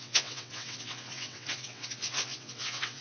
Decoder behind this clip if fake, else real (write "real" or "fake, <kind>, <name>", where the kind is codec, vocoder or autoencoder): fake, vocoder, WaveNeXt